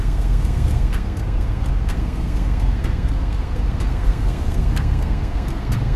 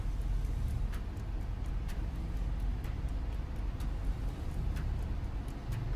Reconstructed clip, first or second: first